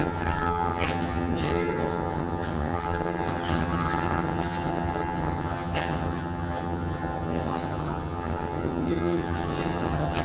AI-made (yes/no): yes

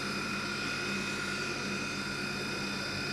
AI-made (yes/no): no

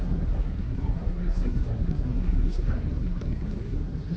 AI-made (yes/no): yes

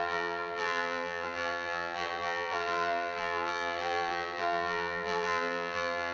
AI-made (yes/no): yes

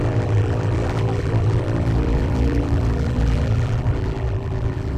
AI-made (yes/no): yes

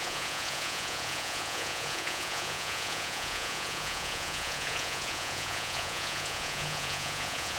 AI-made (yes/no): yes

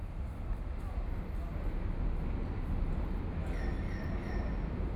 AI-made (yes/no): no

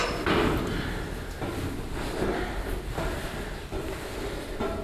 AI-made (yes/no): no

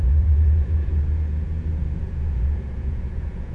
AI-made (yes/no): yes